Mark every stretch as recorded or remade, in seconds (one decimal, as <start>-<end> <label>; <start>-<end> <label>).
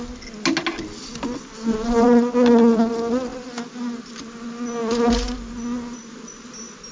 0.0-6.9 recorded